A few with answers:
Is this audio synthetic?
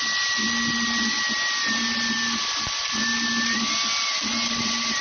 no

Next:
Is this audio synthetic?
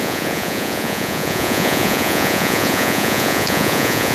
yes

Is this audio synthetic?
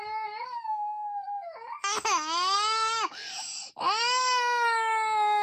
yes